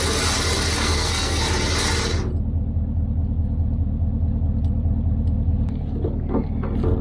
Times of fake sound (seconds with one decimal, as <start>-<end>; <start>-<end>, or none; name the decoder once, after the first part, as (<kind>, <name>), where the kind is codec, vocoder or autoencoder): 0.8-1.4 (codec, SNAC)